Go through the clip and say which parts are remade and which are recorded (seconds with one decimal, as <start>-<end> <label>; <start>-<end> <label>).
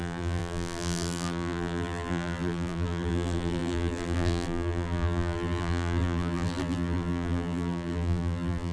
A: 0.0-8.7 remade